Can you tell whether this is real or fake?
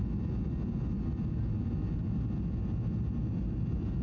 real